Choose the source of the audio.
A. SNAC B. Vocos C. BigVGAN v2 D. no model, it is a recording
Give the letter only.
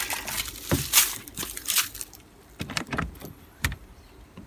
C